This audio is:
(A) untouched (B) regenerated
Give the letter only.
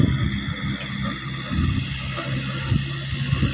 A